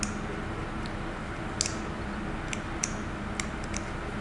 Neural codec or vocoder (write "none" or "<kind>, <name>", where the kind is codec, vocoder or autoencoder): none